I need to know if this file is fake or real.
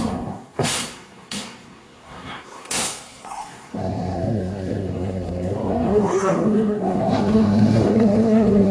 fake